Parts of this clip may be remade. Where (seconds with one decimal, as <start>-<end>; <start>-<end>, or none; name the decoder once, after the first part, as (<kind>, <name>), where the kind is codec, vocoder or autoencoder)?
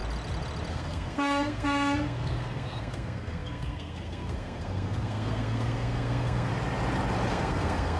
0.7-6.5 (codec, SNAC); 7.3-8.0